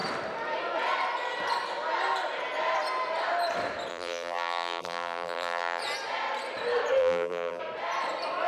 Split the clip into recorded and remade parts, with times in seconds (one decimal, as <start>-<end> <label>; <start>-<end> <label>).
0.0-3.9 recorded; 3.9-5.8 remade; 5.8-7.0 recorded; 7.0-7.6 remade; 7.6-8.5 recorded

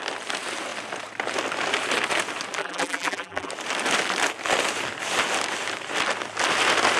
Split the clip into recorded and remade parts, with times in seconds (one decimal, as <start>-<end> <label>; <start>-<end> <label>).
0.0-2.6 recorded; 2.6-3.5 remade; 3.5-7.0 recorded

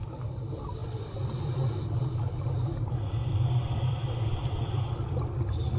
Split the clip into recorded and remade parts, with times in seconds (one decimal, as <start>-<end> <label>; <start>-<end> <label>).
0.0-0.8 recorded; 0.8-2.5 remade; 2.5-3.2 recorded; 3.2-5.2 remade; 5.2-5.8 recorded

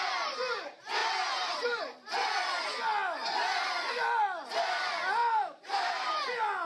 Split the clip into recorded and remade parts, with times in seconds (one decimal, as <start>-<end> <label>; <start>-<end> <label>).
0.0-1.0 recorded; 1.0-1.8 remade; 1.8-5.2 recorded; 5.2-6.1 remade; 6.1-6.7 recorded

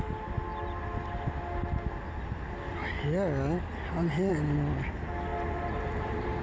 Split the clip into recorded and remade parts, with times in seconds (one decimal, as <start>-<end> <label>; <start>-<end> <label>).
0.0-5.3 recorded; 5.3-6.4 remade

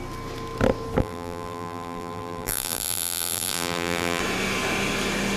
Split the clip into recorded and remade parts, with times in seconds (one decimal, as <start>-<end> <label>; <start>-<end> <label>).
0.0-1.0 recorded; 1.0-4.2 remade; 4.2-5.4 recorded

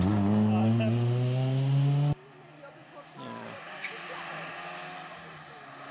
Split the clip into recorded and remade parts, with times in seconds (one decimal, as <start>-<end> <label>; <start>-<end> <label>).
0.0-2.8 recorded; 2.8-4.1 remade; 4.1-5.9 recorded